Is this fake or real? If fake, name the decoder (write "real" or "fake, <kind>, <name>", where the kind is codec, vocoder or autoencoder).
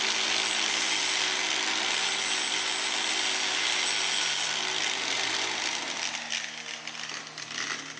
real